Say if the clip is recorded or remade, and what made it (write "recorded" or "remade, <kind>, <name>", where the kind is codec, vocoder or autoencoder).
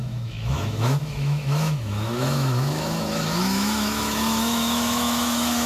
remade, autoencoder, DAC-VAE